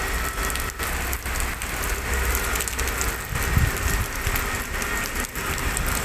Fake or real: real